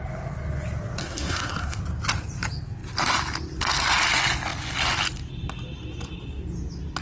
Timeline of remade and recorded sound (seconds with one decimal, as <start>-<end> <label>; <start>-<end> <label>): 0.0-1.0 recorded; 1.0-1.8 remade; 1.8-7.0 recorded